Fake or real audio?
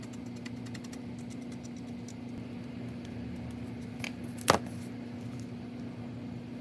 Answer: real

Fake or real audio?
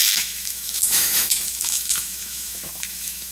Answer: fake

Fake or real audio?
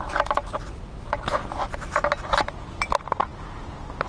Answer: real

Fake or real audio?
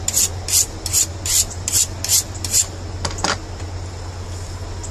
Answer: real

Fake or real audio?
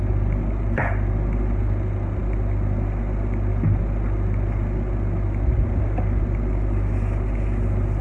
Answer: real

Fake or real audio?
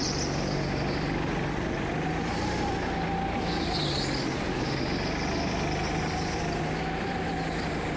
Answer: real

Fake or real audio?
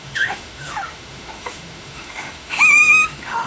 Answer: fake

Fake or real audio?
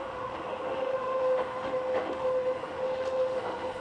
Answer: fake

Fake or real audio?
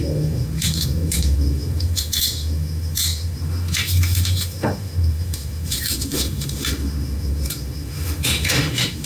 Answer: fake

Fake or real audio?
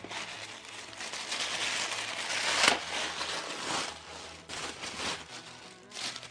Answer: real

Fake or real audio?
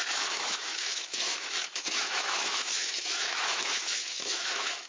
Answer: fake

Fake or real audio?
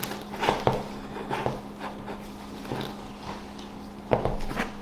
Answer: real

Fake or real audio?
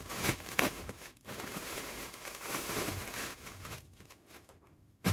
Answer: fake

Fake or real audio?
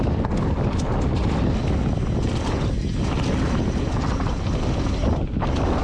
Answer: real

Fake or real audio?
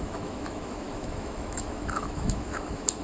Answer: fake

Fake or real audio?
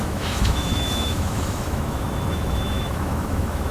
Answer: fake